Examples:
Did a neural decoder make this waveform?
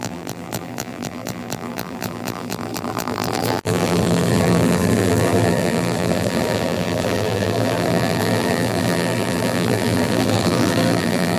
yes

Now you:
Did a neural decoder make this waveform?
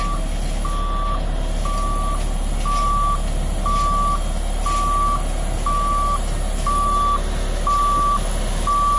no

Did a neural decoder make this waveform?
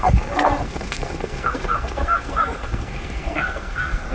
yes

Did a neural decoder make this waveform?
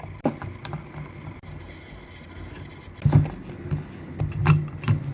no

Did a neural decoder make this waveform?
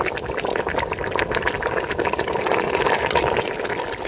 no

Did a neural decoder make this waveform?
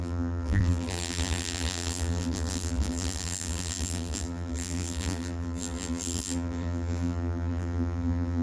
yes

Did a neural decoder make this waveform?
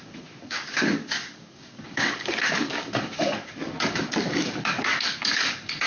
yes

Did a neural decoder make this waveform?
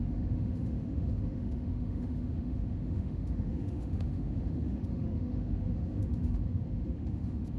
yes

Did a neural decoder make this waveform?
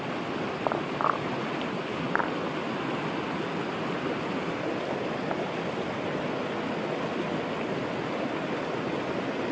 no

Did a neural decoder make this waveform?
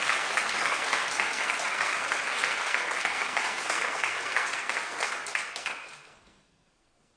yes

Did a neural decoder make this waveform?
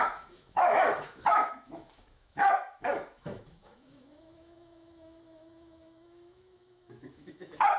yes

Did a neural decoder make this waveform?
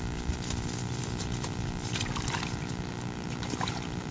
no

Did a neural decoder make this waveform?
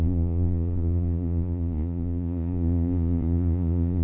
yes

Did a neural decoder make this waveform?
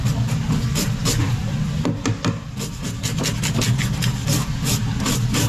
no